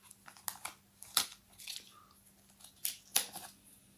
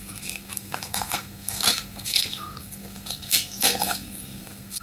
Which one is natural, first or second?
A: first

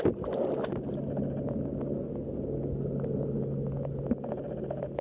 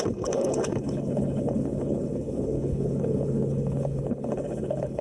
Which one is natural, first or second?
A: first